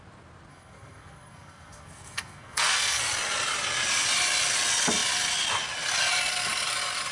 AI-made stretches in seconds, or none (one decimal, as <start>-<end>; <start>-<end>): 0.5-3.0